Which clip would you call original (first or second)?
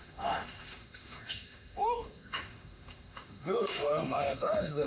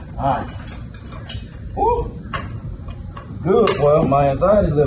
second